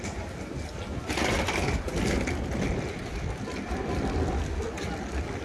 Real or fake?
real